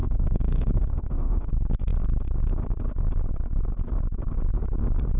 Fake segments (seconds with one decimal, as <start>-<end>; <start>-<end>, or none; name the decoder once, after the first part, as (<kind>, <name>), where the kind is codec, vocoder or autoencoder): 0.0-1.5 (autoencoder, DAC-VAE)